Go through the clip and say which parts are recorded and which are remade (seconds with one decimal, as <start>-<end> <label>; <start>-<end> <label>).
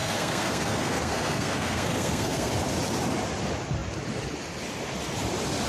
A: 0.0-2.5 remade; 2.5-5.7 recorded